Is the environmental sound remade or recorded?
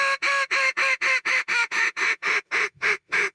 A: remade